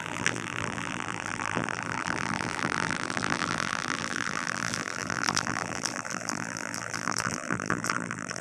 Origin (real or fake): fake